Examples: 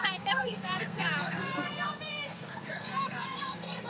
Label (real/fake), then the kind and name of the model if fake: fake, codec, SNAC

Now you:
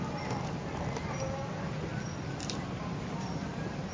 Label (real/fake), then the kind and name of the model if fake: real